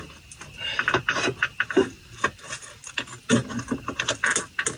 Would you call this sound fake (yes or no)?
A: no